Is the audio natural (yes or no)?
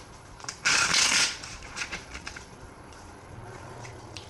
no